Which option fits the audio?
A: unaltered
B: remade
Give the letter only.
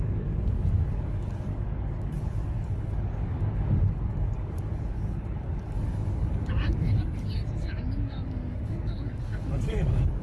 B